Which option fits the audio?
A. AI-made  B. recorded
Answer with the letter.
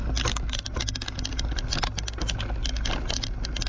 B